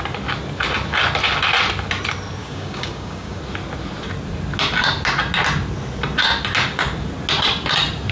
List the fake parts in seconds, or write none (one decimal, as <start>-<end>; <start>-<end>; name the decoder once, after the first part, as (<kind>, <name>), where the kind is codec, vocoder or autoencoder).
2.4-3.4 (codec, DAC)